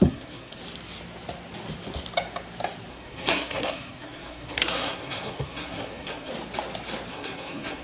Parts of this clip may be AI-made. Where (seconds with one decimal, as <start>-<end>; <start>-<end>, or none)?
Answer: 0.0-0.6; 2.9-6.3; 7.1-7.8